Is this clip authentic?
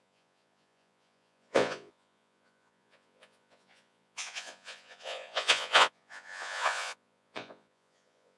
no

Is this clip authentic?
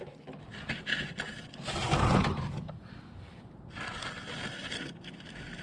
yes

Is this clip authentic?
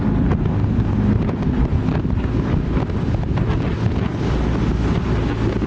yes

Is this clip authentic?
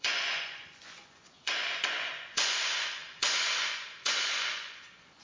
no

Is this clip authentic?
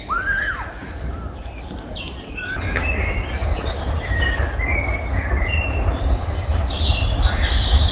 yes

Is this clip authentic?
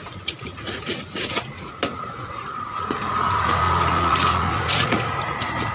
no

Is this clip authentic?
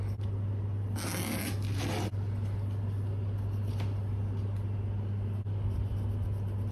yes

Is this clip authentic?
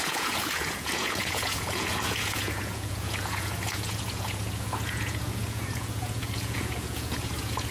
no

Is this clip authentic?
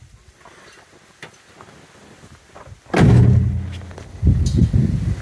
yes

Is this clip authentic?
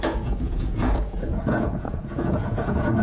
no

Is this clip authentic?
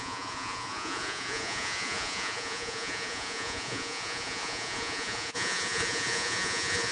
no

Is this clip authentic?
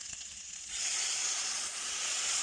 no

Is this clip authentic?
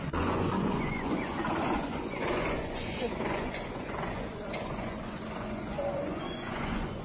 no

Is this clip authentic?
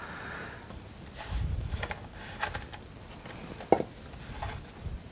yes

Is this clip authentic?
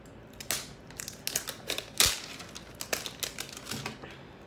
yes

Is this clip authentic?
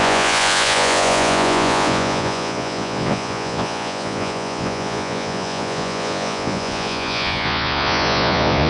no